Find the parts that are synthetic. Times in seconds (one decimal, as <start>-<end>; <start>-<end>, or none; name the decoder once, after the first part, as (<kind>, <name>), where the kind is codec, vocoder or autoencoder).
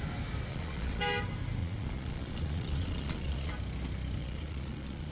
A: 0.5-1.0 (vocoder, Vocos); 1.6-3.5; 4.2-5.1